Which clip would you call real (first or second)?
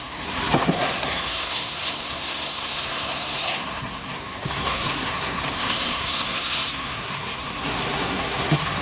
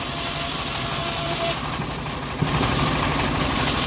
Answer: second